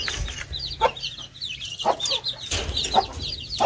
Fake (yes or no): no